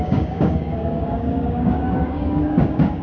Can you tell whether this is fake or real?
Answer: fake